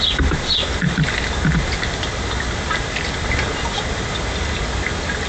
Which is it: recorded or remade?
recorded